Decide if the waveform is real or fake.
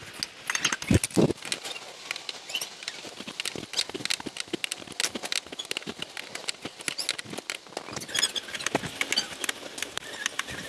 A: real